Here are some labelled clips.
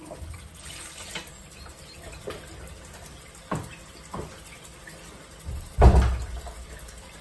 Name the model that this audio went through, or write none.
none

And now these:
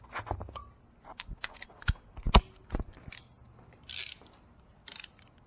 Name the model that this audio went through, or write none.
none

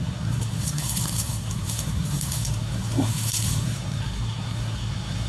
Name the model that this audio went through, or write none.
codec, SNAC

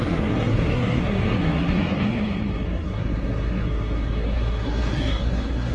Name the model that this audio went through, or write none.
codec, SNAC